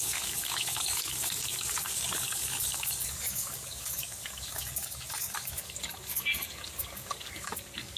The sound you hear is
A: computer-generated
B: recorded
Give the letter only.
A